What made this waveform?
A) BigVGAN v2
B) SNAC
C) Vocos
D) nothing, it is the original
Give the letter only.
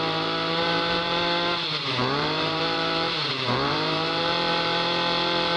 A